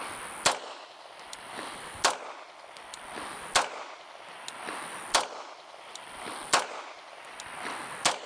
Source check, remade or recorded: recorded